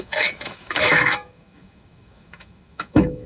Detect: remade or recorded remade